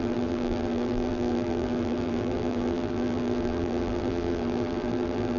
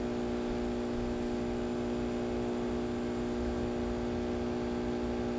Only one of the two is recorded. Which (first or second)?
second